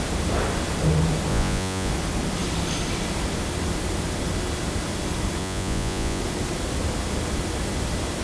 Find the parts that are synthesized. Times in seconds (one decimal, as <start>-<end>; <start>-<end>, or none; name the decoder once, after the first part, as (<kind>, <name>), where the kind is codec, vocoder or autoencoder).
1.3-1.9 (vocoder, Vocos); 5.4-6.2